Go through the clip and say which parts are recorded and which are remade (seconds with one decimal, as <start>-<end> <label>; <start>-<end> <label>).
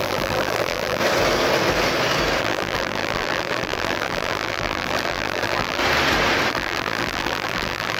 0.0-1.0 remade; 1.0-2.4 recorded; 2.4-5.8 remade; 5.8-6.5 recorded; 6.5-8.0 remade